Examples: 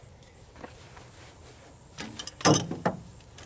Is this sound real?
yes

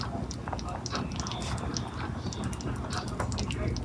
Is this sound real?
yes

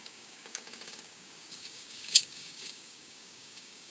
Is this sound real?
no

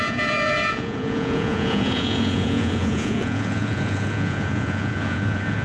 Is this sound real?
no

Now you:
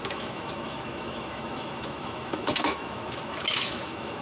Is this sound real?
no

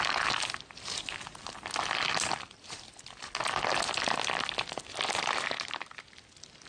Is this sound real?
yes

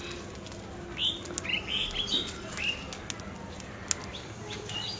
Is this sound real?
yes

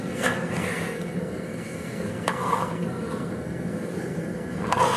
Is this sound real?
no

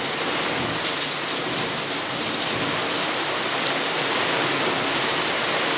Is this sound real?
yes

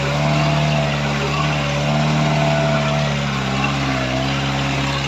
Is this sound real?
yes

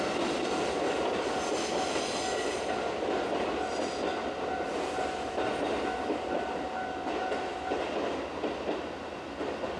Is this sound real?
yes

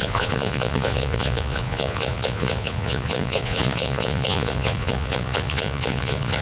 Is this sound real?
no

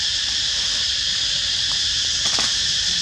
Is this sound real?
no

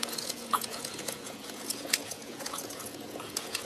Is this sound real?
no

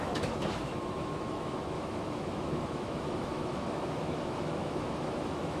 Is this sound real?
no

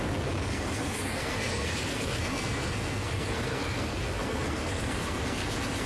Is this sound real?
no